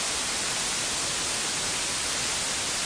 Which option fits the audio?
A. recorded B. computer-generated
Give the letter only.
A